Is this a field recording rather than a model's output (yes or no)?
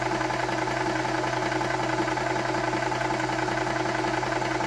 yes